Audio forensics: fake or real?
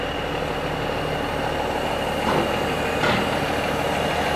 real